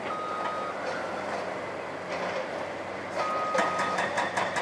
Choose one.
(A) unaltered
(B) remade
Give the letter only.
A